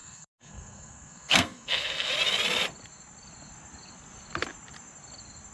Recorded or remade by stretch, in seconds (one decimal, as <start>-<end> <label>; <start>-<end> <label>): 0.0-2.1 remade; 2.1-5.5 recorded

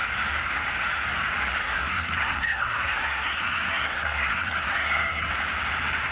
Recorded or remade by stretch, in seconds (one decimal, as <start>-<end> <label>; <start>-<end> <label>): 0.0-1.6 recorded; 1.6-5.3 remade; 5.3-6.1 recorded

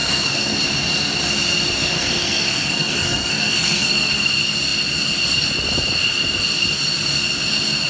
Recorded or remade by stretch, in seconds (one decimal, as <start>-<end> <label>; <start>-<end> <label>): 0.0-0.6 remade; 0.6-1.8 recorded; 1.8-4.1 remade; 4.1-7.9 recorded

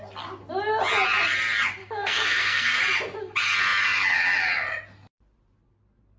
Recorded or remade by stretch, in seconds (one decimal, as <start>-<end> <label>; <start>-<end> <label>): 0.0-1.8 recorded; 1.8-2.8 remade; 2.8-6.2 recorded

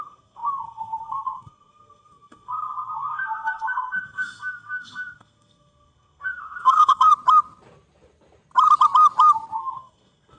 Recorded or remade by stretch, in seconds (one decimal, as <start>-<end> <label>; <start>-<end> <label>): 0.0-7.1 remade; 7.1-9.6 recorded; 9.6-10.4 remade

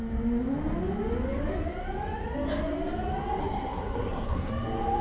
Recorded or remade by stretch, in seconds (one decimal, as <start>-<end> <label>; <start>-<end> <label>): 0.0-3.4 recorded; 3.4-4.5 remade; 4.5-5.0 recorded